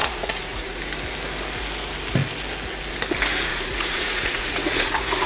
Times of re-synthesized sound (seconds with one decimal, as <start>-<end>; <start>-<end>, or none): 0.0-0.8; 3.5-5.3